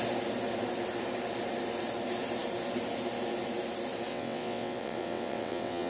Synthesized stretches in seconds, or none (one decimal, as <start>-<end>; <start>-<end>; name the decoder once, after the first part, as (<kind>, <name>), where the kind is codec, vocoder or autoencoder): 4.1-5.9 (vocoder, WaveNeXt)